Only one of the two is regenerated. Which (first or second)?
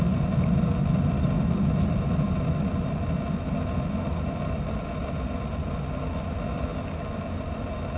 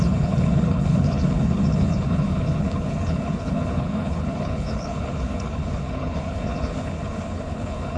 second